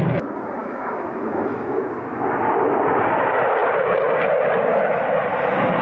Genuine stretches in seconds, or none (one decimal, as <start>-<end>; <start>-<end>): 0.0-0.6; 1.8-5.8